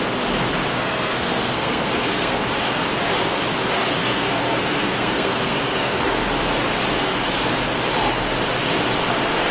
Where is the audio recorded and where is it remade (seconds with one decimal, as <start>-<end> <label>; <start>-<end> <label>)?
0.0-0.7 recorded; 0.7-2.4 remade; 2.4-4.0 recorded; 4.0-6.0 remade; 6.0-9.5 recorded